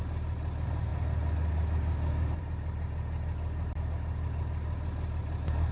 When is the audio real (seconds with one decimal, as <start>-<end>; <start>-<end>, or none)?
0.0-5.7